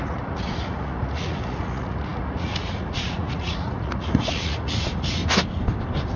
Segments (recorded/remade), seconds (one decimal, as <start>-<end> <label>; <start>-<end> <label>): 0.0-5.2 remade; 5.2-6.2 recorded